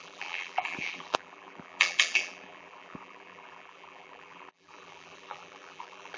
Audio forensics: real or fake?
fake